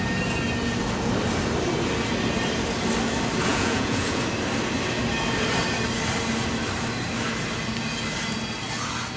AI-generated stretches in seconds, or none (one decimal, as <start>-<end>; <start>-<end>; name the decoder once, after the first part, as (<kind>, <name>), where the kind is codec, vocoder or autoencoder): 3.5-4.2 (vocoder, Vocos)